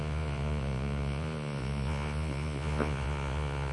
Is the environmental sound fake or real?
fake